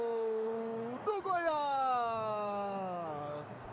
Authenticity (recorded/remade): remade